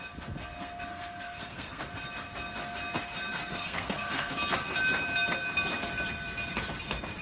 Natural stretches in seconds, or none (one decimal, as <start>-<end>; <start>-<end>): 0.0-0.4; 1.8-3.5; 4.3-7.2